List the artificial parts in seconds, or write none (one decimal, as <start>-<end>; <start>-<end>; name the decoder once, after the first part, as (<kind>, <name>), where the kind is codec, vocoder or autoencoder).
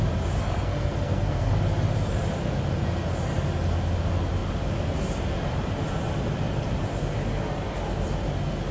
0.4-1.5 (codec, SNAC)